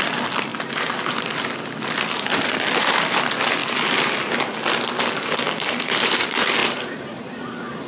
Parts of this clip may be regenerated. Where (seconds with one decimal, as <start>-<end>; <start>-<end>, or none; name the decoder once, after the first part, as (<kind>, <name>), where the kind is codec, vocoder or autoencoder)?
0.0-3.6 (vocoder, BigVGAN v2); 4.9-7.9